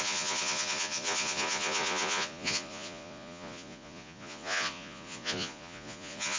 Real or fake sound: fake